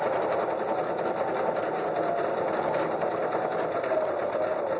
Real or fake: real